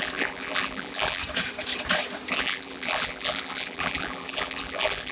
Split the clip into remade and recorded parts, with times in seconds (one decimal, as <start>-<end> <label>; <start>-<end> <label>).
0.0-1.2 remade; 1.2-2.3 recorded; 2.3-5.1 remade